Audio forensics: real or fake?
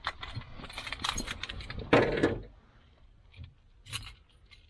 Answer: real